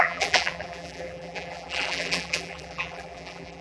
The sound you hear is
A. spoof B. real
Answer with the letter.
A